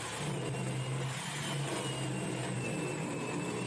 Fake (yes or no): no